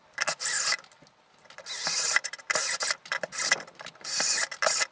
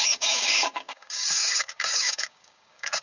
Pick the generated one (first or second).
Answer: second